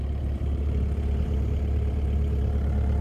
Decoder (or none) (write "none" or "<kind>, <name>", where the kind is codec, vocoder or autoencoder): vocoder, BigVGAN v2